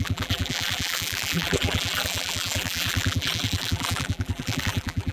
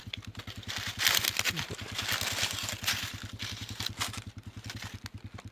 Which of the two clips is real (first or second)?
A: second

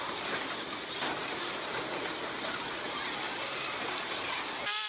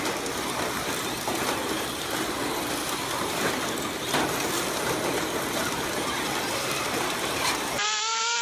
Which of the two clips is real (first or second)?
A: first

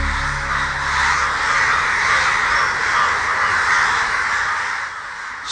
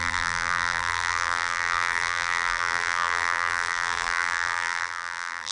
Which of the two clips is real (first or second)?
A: first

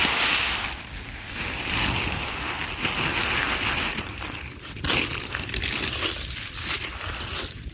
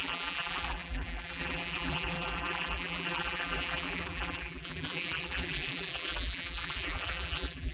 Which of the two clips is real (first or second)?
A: first